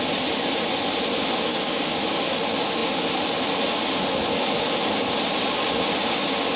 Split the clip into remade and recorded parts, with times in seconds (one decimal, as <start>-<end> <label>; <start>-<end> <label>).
0.0-1.5 recorded; 1.5-2.0 remade; 2.0-6.6 recorded